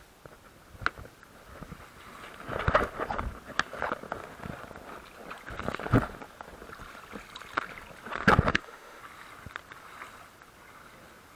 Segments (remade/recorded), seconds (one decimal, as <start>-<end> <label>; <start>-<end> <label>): 0.0-8.5 recorded; 8.5-9.0 remade; 9.0-11.4 recorded